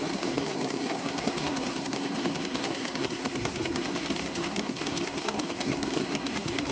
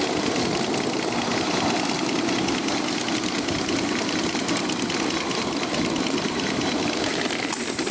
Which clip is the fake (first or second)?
first